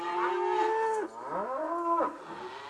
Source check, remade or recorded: recorded